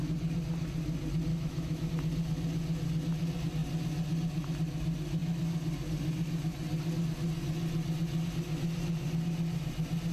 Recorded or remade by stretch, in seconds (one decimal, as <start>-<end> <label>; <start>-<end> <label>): 0.0-1.3 recorded; 1.3-1.9 remade; 1.9-10.1 recorded